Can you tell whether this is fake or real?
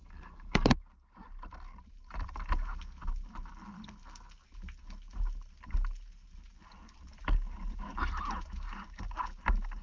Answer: real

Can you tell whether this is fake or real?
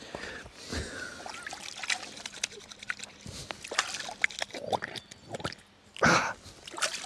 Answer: real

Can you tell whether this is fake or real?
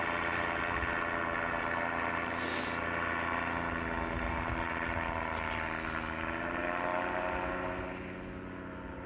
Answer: real